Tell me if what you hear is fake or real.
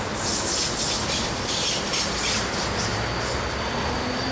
real